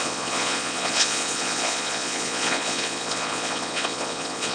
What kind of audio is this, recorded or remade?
remade